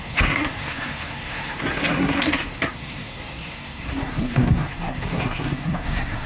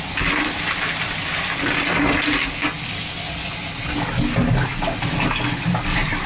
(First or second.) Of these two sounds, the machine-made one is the first